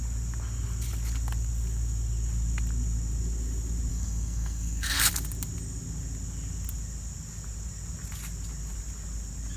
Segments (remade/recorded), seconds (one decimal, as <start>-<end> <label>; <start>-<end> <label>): 0.0-3.9 recorded; 3.9-5.1 remade; 5.1-9.6 recorded